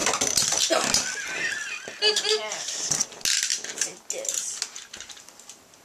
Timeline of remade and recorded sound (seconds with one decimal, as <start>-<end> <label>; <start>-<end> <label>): 0.0-5.8 recorded